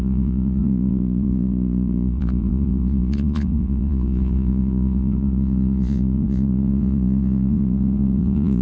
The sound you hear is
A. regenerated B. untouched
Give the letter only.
A